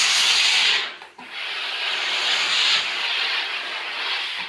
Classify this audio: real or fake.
real